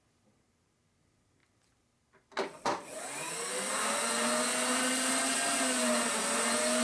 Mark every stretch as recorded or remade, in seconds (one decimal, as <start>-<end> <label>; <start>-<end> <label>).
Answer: 0.0-6.8 recorded